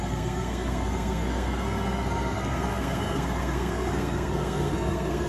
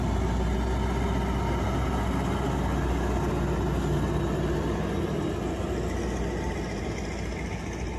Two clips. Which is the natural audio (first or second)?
second